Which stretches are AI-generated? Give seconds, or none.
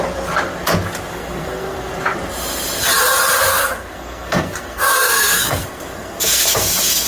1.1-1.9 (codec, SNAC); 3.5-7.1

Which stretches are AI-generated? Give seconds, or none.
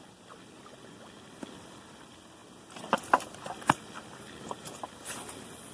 2.4-3.3 (vocoder, BigVGAN v2)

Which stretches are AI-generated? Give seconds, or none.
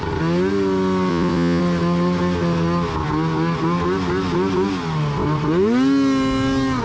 1.1-1.6 (vocoder, Vocos)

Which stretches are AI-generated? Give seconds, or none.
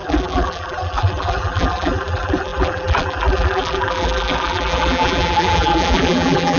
0.0-6.6 (vocoder, BigVGAN v2)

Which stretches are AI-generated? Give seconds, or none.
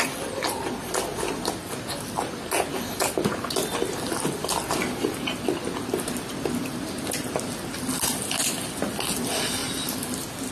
none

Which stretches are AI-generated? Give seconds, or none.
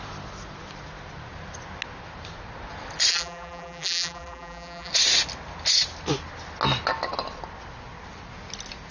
3.1-4.9 (vocoder, BigVGAN v2)